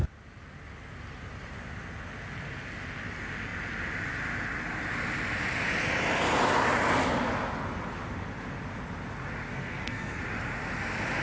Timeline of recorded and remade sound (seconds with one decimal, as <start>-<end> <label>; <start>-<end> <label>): 0.0-9.5 recorded; 9.5-10.2 remade; 10.2-11.2 recorded

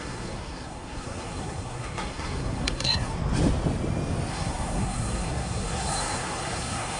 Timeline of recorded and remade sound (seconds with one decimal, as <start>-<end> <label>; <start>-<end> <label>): 0.0-3.1 remade; 3.1-4.3 recorded; 4.3-7.0 remade

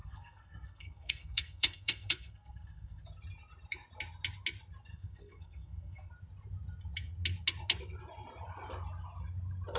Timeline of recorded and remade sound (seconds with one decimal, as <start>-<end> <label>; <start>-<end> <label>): 0.0-3.0 remade; 3.0-4.9 recorded; 4.9-6.1 remade; 6.1-9.8 recorded

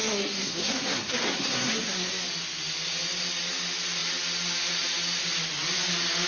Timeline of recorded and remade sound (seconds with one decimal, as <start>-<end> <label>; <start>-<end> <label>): 0.0-2.1 remade; 2.1-6.3 recorded

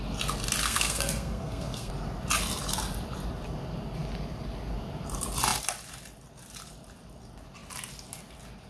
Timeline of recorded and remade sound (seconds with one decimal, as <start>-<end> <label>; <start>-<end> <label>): 0.0-0.6 recorded; 0.6-1.9 remade; 1.9-8.7 recorded

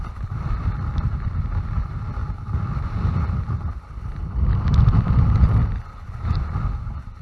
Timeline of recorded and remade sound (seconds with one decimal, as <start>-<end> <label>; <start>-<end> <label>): 0.0-7.2 recorded

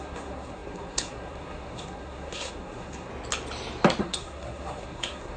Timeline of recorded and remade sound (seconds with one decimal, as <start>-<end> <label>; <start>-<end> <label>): 0.0-3.1 remade; 3.1-4.0 recorded; 4.0-5.4 remade

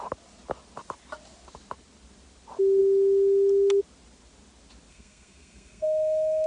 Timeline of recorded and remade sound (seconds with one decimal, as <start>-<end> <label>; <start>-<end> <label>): 0.0-4.9 recorded; 4.9-6.5 remade